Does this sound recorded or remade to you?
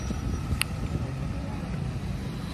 recorded